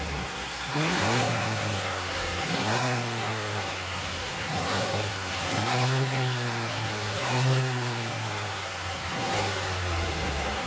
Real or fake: fake